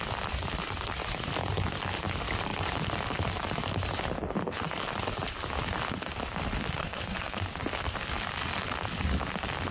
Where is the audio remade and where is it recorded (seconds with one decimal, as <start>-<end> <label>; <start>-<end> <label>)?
0.0-6.8 recorded; 6.8-7.4 remade; 7.4-9.7 recorded